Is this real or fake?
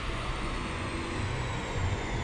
fake